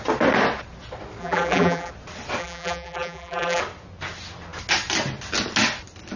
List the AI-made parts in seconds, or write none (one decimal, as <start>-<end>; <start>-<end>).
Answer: 1.2-1.9; 2.4-3.6